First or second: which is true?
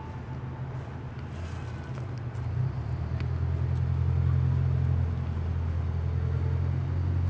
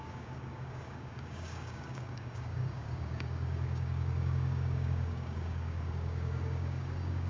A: first